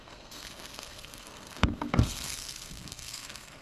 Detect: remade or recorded remade